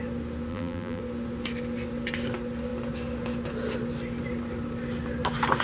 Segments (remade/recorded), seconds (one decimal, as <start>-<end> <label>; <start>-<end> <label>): 0.0-0.5 recorded; 0.5-1.0 remade; 1.0-5.6 recorded